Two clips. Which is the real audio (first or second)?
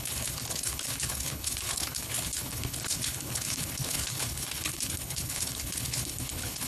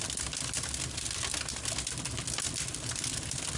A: second